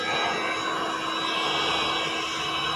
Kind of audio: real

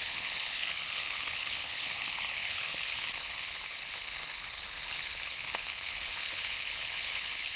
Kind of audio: fake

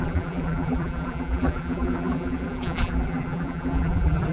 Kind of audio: fake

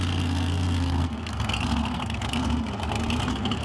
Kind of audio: fake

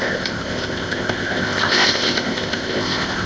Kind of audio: fake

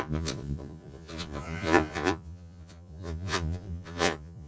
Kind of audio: fake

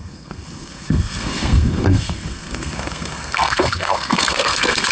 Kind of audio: fake